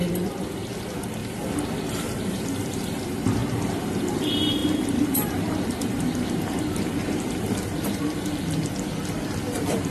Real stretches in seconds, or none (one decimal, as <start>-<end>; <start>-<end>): none

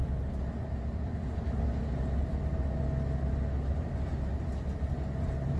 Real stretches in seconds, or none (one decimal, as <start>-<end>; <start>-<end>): 0.0-4.1; 4.8-5.6

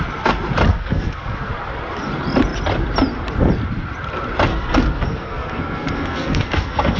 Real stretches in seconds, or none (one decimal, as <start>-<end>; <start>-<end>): 0.0-0.7; 1.5-4.5

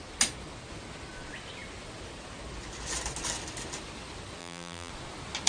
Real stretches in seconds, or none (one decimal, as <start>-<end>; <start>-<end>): 0.0-4.4; 4.9-5.5